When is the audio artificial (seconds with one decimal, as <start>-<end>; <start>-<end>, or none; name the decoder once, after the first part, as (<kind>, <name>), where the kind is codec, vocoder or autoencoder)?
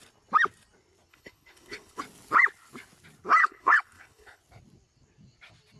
1.1-2.0 (codec, HILCodec); 3.4-4.4